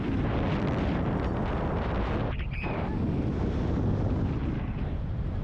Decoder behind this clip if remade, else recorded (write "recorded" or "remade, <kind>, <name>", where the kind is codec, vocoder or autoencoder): recorded